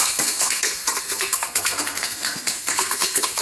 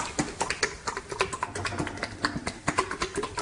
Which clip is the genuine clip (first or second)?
second